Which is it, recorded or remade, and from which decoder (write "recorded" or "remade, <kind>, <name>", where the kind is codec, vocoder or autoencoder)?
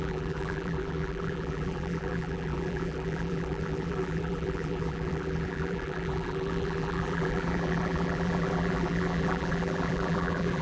remade, vocoder, BigVGAN v2